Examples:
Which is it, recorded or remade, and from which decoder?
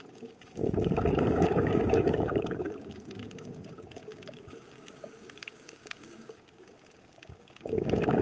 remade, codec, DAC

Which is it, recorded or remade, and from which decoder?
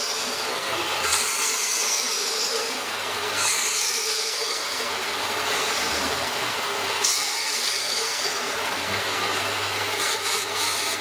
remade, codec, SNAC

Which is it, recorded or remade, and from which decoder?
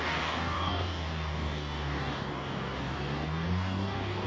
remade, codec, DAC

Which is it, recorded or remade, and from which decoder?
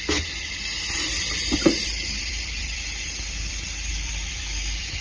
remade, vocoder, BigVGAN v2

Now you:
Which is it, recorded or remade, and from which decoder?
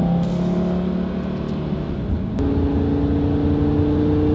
recorded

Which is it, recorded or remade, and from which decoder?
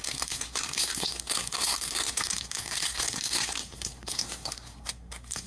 remade, codec, SNAC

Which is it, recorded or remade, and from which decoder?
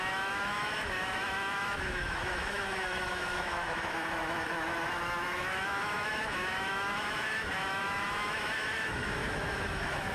remade, autoencoder, DAC-VAE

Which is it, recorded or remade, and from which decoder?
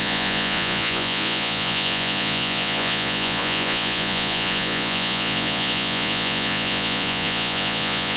remade, vocoder, Vocos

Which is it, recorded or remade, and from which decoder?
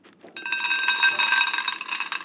recorded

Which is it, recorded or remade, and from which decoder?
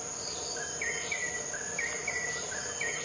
recorded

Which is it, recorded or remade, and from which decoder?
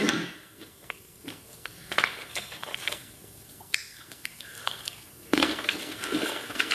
remade, codec, SNAC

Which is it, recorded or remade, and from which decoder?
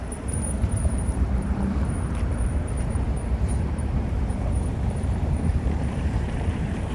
remade, vocoder, BigVGAN v2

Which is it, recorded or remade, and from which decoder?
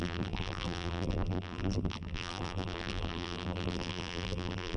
remade, vocoder, BigVGAN v2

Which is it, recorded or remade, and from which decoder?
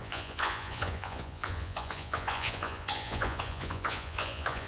remade, vocoder, Vocos